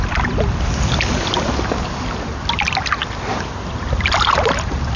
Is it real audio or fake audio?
real